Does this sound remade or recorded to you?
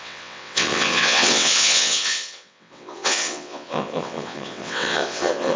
remade